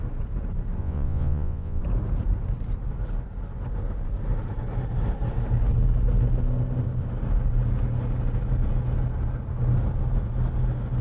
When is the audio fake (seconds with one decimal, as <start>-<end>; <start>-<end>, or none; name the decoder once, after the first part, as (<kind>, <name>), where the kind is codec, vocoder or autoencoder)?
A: 0.8-1.8 (vocoder, Vocos)